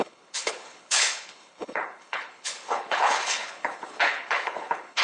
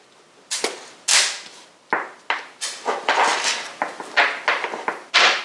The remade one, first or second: first